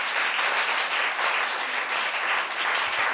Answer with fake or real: real